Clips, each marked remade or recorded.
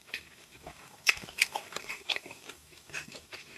remade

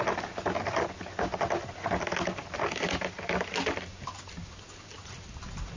recorded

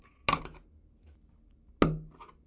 recorded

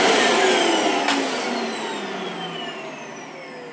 recorded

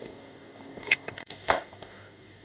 remade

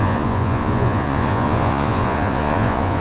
remade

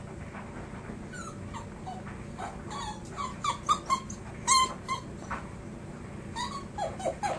recorded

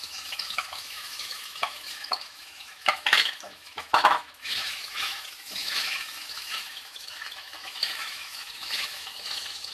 remade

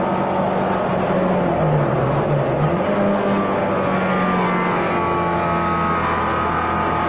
recorded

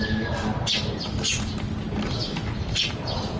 recorded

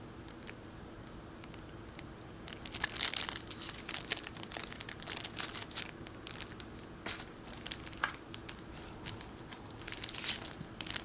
recorded